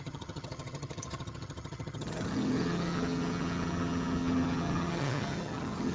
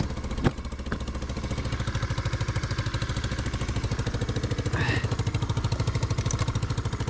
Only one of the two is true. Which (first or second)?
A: second